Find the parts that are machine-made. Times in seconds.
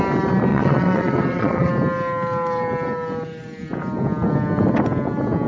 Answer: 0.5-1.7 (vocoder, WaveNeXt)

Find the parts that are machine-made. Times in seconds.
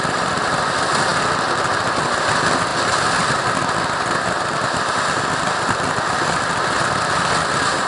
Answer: none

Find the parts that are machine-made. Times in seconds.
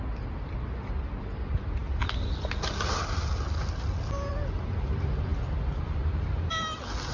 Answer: none